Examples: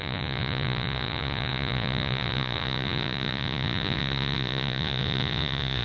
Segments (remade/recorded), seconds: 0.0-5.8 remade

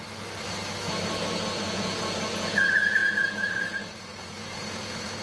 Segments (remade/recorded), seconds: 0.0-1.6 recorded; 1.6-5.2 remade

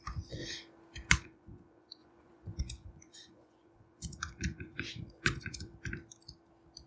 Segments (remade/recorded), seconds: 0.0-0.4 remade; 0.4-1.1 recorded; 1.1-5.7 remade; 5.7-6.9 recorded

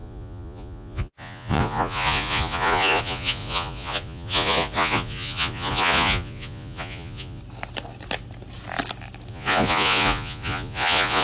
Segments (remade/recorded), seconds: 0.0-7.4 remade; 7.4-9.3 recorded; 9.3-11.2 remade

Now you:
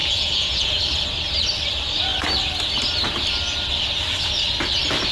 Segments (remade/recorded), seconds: 0.0-0.8 remade; 0.8-5.1 recorded

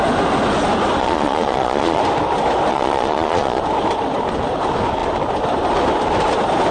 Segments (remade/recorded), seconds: 0.0-1.0 recorded; 1.0-2.0 remade; 2.0-2.7 recorded; 2.7-3.6 remade; 3.6-6.7 recorded